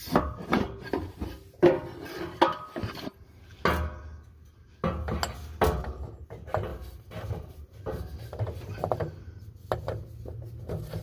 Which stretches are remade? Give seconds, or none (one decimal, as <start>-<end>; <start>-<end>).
none